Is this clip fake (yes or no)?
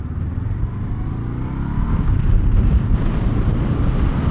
no